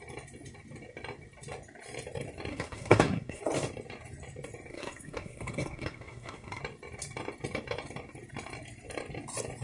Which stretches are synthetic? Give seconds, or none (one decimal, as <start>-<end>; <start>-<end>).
2.5-3.4; 4.7-6.6